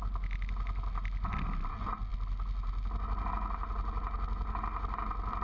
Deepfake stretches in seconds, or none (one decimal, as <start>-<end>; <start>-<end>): none

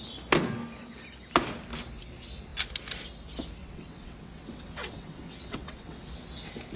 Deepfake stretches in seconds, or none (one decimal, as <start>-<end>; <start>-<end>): 3.6-6.0

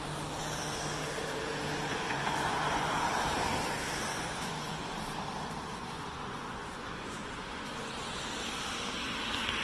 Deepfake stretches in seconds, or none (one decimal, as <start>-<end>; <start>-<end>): 1.9-2.9; 4.1-5.0; 5.7-8.2

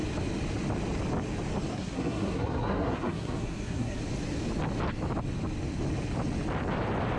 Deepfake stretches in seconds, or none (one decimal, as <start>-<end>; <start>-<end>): 1.7-4.0

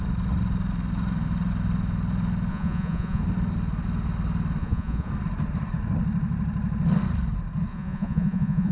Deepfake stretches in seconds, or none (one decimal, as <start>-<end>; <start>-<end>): 2.5-3.2; 4.6-5.1; 7.7-8.7

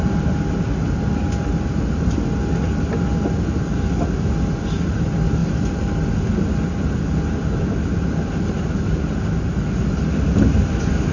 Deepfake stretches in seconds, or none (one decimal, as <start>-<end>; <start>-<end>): none

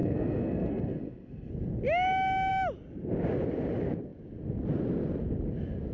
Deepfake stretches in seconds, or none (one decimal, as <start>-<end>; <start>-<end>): 0.0-1.5

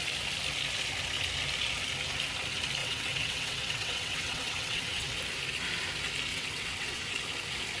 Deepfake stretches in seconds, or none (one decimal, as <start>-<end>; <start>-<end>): 2.8-5.2; 6.3-7.0